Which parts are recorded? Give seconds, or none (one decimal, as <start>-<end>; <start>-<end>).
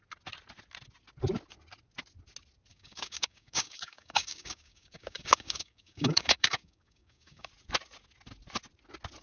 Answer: 0.0-2.7; 7.5-9.2